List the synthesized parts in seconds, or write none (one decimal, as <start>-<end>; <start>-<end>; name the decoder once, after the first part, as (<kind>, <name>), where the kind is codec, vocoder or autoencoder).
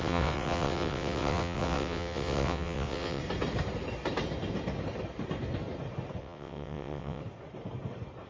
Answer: 0.0-3.2 (vocoder, WaveNeXt); 6.2-7.2